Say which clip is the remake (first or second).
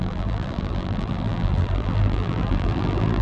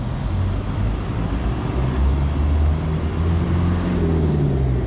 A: first